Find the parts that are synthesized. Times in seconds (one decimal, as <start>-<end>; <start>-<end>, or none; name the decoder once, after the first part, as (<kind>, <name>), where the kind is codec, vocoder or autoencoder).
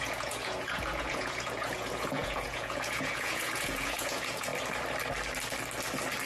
0.0-4.5 (vocoder, Vocos)